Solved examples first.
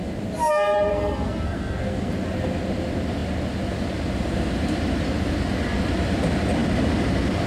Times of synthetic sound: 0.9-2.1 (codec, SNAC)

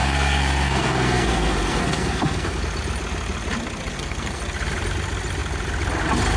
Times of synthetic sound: 0.0-2.6 (codec, SNAC); 3.9-4.4

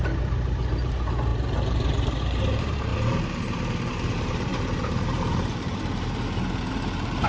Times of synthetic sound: 0.0-7.3 (vocoder, BigVGAN v2)

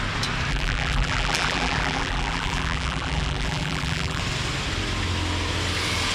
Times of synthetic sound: 0.5-4.2 (vocoder, BigVGAN v2)

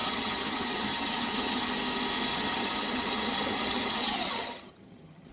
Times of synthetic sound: 0.0-1.7 (vocoder, HiFi-GAN); 2.3-5.3

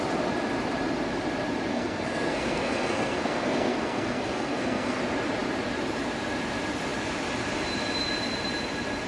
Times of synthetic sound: 1.7-5.0 (codec, SNAC)